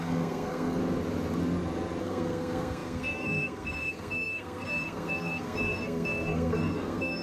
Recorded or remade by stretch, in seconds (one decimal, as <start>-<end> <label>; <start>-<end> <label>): 0.0-0.8 remade; 0.8-2.0 recorded; 2.0-7.2 remade